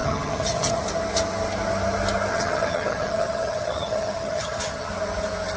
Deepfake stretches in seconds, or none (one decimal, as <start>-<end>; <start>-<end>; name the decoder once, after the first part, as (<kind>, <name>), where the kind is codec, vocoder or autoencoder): 0.0-0.8 (vocoder, HiFi-GAN); 2.3-4.9